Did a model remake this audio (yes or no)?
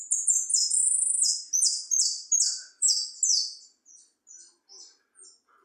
no